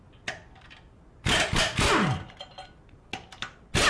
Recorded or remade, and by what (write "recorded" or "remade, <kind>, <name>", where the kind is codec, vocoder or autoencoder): recorded